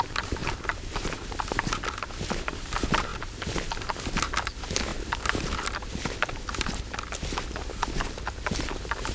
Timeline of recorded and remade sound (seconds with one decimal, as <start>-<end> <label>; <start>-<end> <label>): 0.0-9.1 recorded